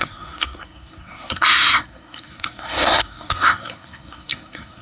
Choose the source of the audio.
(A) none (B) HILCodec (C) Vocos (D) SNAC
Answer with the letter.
D